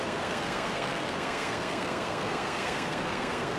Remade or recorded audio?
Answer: remade